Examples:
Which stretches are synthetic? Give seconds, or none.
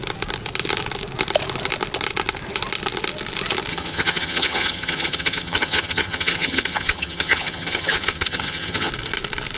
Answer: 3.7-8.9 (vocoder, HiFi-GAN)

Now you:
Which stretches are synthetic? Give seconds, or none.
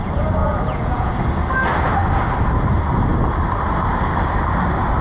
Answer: 0.4-1.1 (vocoder, Vocos)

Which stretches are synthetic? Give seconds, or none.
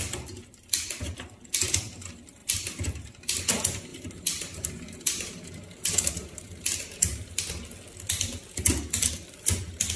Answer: 2.4-3.4 (vocoder, BigVGAN v2); 3.9-7.4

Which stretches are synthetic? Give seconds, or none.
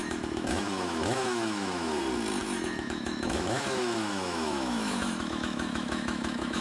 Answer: 0.0-2.0 (autoencoder, DAC-VAE); 2.4-6.6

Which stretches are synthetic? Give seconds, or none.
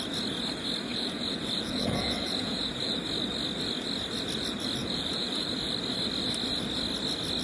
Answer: 0.9-2.9 (vocoder, Vocos); 4.8-5.7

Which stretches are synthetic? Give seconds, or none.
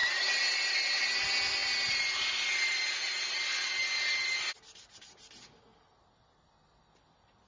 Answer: none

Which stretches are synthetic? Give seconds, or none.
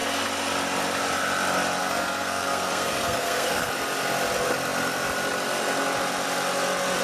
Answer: 1.8-3.7 (codec, SNAC)